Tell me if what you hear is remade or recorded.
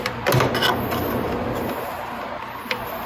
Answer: recorded